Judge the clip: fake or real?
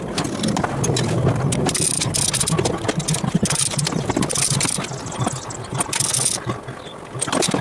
real